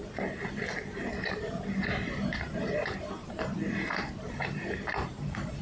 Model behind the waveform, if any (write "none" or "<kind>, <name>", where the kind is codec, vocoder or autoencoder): vocoder, BigVGAN v2